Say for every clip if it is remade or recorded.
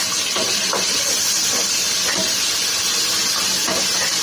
recorded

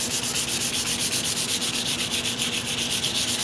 recorded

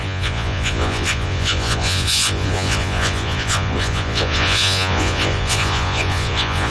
remade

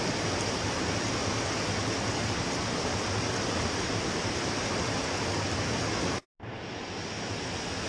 recorded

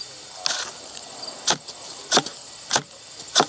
recorded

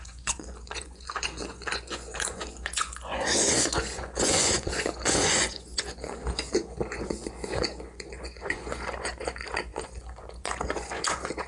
remade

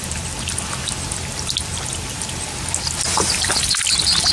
recorded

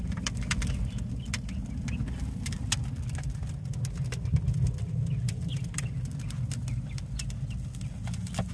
recorded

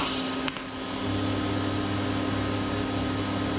recorded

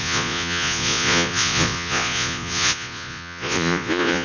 remade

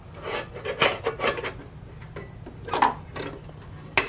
recorded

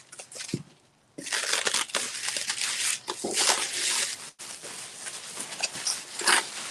recorded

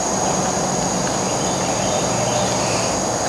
recorded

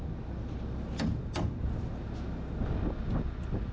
recorded